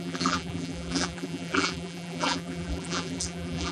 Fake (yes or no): yes